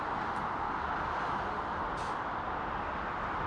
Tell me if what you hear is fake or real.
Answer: real